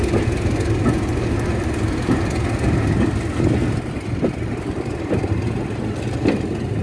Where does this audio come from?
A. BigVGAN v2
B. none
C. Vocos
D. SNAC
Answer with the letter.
B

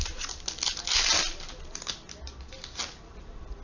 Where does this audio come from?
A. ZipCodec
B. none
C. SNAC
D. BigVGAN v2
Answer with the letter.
B